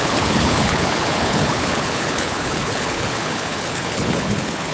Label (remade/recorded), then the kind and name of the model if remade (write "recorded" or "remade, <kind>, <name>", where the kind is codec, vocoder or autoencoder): remade, codec, HILCodec